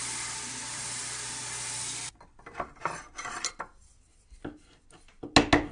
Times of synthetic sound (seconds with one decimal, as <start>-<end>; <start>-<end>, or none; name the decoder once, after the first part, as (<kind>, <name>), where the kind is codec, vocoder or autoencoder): none